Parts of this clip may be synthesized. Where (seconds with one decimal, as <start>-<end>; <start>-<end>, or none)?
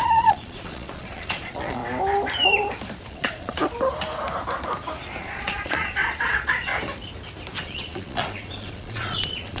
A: 0.0-1.8; 3.0-3.6; 5.2-6.7; 7.6-9.6